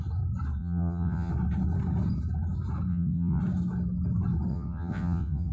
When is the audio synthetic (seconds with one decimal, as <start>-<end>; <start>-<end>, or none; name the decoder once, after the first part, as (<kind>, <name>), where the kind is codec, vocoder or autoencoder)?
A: 0.6-1.3 (vocoder, WaveNeXt); 2.9-3.4; 4.5-5.5